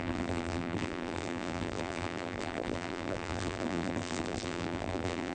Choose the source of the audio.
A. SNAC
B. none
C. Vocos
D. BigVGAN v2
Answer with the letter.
D